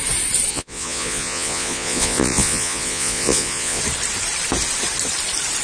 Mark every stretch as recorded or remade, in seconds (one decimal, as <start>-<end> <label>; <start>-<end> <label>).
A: 0.0-0.5 recorded; 0.5-3.8 remade; 3.8-5.6 recorded